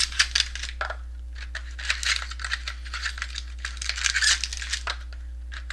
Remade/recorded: recorded